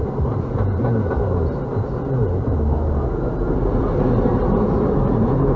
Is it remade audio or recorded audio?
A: recorded